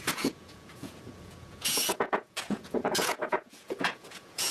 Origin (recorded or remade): remade